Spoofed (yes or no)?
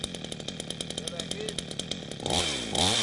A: no